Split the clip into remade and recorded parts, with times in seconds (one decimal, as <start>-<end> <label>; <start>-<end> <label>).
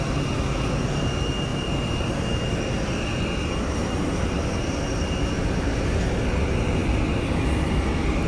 0.0-8.3 recorded